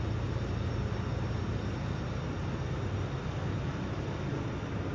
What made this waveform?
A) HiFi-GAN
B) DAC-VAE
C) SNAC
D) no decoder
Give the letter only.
D